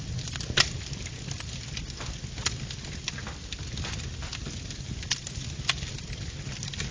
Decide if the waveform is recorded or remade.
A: recorded